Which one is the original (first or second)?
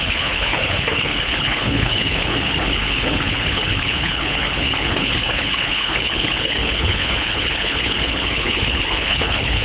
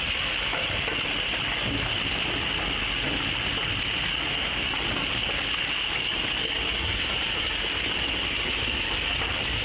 second